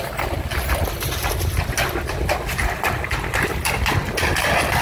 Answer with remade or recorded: recorded